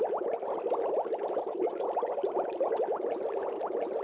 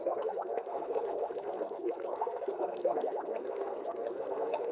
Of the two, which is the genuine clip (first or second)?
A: first